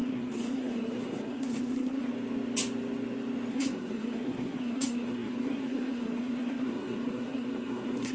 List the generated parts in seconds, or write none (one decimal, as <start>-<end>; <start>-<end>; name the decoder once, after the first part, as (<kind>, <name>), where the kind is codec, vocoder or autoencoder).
0.0-2.1 (codec, SNAC); 3.5-8.1